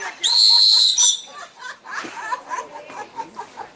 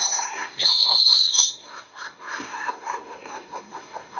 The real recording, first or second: first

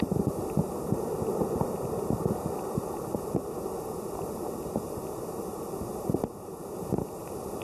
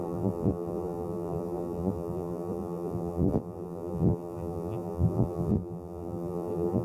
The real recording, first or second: first